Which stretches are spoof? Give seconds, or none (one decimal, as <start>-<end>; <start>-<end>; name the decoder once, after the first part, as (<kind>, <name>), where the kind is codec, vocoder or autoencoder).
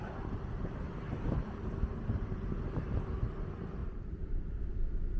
0.0-3.1 (vocoder, BigVGAN v2); 3.8-4.6